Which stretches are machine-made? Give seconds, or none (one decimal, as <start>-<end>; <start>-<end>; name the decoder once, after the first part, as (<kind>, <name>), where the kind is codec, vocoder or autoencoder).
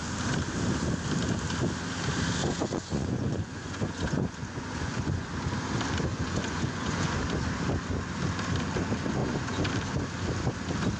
2.4-5.3 (vocoder, Vocos); 6.1-7.2; 9.2-9.7